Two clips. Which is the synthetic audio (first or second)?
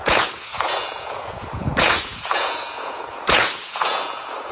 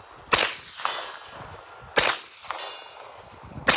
first